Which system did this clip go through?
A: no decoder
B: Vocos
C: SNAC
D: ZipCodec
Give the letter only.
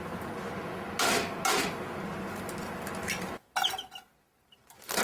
A